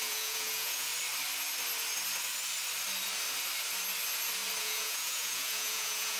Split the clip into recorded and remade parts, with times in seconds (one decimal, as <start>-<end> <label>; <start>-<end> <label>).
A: 0.0-0.9 remade; 0.9-4.6 recorded; 4.6-6.2 remade